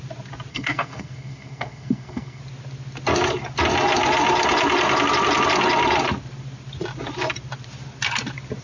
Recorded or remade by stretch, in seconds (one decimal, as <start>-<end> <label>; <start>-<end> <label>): 0.0-0.5 recorded; 0.5-2.4 remade; 2.4-8.6 recorded